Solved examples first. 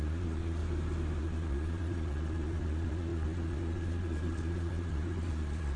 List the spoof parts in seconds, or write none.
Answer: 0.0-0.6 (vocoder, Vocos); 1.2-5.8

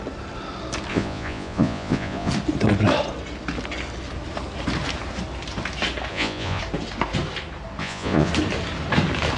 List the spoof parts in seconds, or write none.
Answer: 0.9-2.3 (vocoder, Vocos); 6.1-6.6; 7.8-8.3

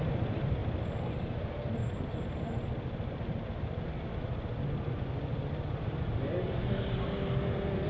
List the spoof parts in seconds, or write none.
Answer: none